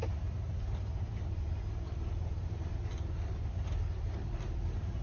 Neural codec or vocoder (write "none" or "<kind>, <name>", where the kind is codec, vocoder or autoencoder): vocoder, BigVGAN v2